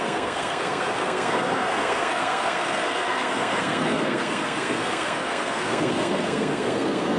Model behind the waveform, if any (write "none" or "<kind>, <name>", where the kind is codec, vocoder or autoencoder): codec, SNAC